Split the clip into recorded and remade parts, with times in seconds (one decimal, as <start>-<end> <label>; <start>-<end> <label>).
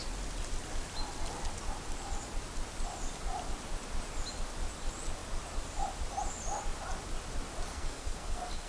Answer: 0.0-7.7 recorded; 7.7-8.7 remade